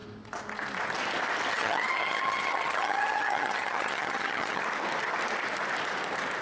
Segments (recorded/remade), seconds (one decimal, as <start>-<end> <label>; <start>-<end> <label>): 0.0-1.5 recorded; 1.5-4.6 remade; 4.6-6.4 recorded

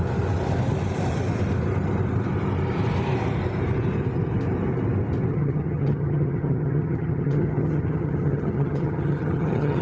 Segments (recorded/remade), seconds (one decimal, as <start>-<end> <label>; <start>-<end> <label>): 0.0-5.3 recorded; 5.3-9.8 remade

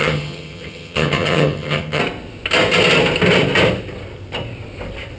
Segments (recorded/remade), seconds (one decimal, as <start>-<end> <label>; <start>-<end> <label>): 0.0-2.0 remade; 2.0-5.2 recorded